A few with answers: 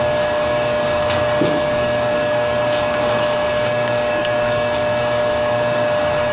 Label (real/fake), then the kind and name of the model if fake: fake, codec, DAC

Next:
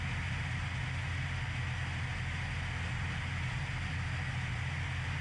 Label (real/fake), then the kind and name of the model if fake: real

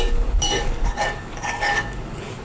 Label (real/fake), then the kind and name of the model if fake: fake, codec, DAC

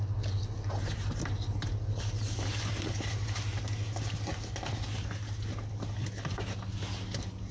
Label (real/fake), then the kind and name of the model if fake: real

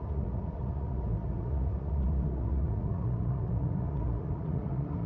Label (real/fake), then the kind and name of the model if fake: fake, vocoder, Vocos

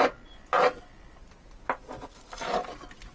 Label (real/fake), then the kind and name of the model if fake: real